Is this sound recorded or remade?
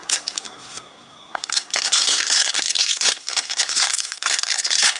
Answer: remade